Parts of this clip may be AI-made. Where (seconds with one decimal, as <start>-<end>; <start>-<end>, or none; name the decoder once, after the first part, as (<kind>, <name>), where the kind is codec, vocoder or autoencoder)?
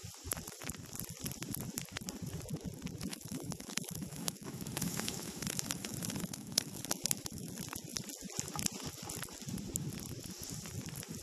3.1-7.5 (autoencoder, DAC-VAE)